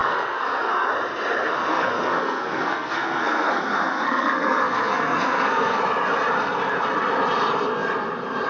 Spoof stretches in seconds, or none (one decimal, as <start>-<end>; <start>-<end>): 0.0-0.9; 1.7-5.8